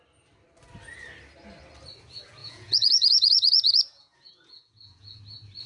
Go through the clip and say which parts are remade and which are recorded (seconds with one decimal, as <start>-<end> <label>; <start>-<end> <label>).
0.0-2.4 recorded; 2.4-5.2 remade; 5.2-5.7 recorded